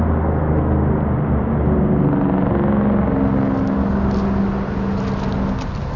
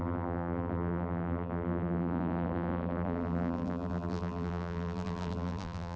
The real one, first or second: first